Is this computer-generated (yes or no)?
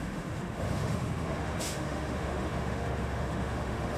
yes